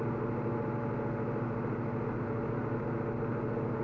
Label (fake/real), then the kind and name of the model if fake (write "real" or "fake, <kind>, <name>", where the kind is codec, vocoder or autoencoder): real